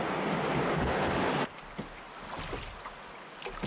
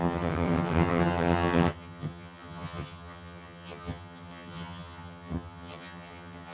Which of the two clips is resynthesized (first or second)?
second